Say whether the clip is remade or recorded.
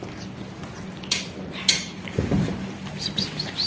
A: recorded